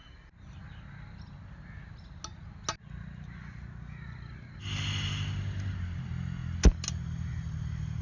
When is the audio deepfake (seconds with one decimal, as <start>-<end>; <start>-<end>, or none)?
none

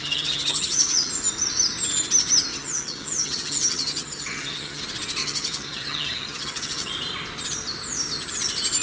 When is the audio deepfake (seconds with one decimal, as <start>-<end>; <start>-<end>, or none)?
0.0-1.1; 2.5-4.8; 5.2-6.9